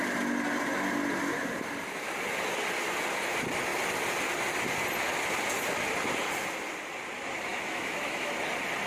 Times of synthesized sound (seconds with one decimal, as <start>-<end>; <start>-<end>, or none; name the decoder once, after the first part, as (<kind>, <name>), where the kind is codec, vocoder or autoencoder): 7.5-8.3 (autoencoder, DAC-VAE)